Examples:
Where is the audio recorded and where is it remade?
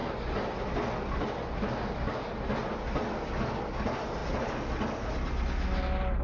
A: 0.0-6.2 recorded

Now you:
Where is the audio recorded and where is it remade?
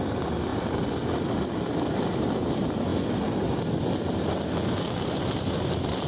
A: 0.0-6.1 recorded